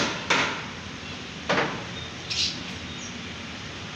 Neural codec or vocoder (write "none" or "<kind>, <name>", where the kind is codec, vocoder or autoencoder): none